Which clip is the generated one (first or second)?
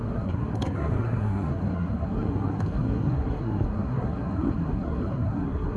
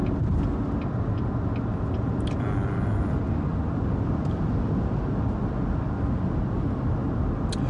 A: first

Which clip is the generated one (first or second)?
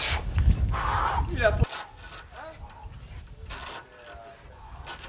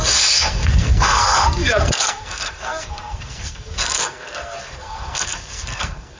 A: second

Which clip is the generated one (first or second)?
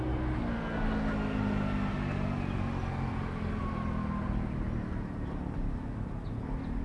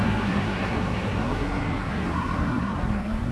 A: second